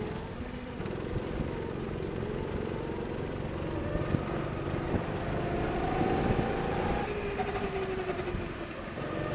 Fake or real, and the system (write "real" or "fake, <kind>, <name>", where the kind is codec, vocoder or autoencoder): real